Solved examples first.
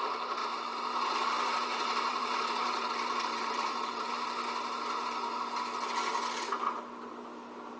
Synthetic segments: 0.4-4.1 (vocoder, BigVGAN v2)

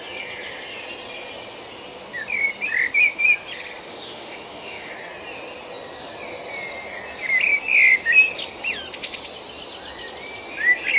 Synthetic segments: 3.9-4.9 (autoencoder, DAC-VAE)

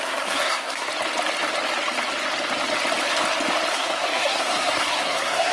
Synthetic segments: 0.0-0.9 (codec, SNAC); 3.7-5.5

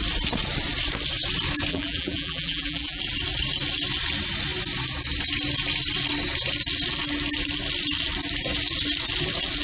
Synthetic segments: 1.7-3.0 (vocoder, BigVGAN v2)

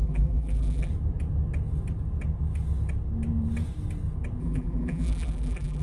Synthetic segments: 0.0-0.9 (vocoder, BigVGAN v2); 4.4-5.8

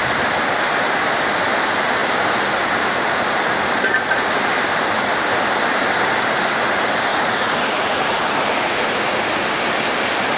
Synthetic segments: 7.1-9.2 (vocoder, Vocos)